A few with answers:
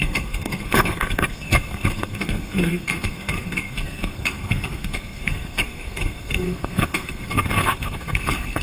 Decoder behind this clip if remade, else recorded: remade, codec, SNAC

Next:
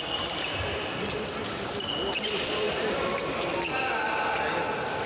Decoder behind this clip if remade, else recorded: recorded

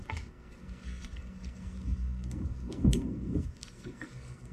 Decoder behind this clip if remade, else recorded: remade, codec, SNAC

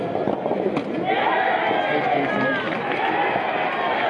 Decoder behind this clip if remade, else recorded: recorded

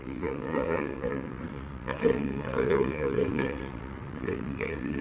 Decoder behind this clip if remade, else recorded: remade, vocoder, WaveNeXt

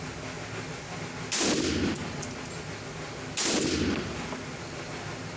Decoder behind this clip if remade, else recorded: recorded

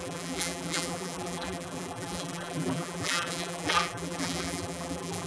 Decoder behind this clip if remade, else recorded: remade, vocoder, BigVGAN v2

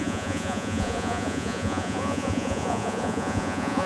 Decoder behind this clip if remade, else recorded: remade, vocoder, Vocos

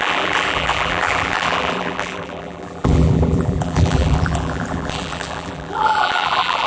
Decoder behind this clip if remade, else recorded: remade, vocoder, BigVGAN v2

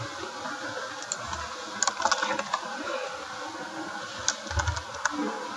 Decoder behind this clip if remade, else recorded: recorded